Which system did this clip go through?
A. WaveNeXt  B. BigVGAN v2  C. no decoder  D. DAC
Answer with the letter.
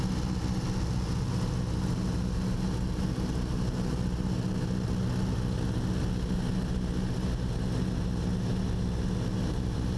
C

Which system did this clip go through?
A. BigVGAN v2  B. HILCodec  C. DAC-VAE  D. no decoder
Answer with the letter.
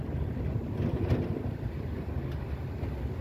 D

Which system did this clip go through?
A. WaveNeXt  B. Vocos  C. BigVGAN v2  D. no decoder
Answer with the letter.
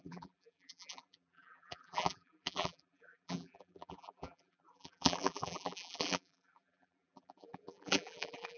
C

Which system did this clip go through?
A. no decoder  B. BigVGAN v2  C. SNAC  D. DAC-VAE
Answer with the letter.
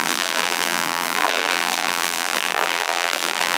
B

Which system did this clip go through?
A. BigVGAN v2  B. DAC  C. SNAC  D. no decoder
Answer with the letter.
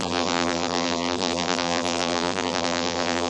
A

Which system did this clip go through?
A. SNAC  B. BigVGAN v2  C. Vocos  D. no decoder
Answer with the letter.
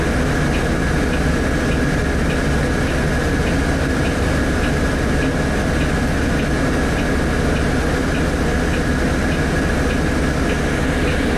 D